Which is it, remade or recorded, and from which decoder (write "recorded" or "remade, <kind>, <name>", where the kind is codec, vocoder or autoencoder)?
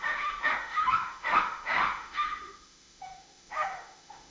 remade, autoencoder, DAC-VAE